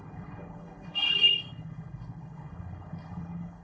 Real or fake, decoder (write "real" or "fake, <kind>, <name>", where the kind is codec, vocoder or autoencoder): fake, codec, HILCodec